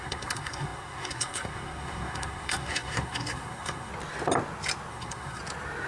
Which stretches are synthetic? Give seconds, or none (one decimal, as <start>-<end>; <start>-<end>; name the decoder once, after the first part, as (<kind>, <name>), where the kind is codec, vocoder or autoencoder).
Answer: 0.0-3.9 (codec, SNAC); 4.9-5.4

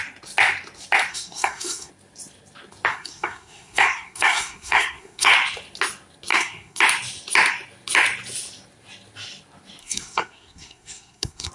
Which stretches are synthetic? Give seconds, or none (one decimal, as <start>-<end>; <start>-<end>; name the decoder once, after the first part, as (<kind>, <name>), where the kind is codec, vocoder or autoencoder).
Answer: 1.1-1.9 (codec, SNAC); 2.9-5.3; 6.3-6.8; 9.8-11.5

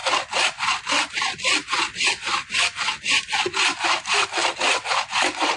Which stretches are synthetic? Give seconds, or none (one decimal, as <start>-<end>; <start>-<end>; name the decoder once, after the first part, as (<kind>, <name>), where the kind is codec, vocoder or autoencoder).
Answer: none

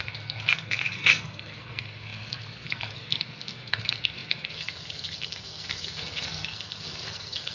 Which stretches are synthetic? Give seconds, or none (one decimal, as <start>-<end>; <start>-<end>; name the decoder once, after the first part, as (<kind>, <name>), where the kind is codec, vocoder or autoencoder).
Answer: 0.0-7.5 (codec, SNAC)

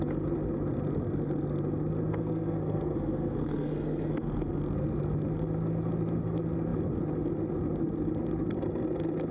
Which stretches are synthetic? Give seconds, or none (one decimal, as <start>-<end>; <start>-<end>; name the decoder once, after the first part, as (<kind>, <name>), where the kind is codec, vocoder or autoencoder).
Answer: 2.1-4.6 (codec, SNAC)